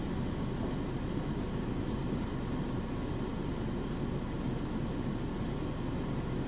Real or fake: real